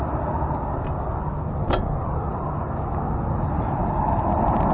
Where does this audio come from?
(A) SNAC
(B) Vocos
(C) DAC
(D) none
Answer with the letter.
D